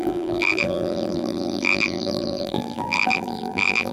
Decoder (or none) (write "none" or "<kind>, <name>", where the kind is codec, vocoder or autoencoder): vocoder, BigVGAN v2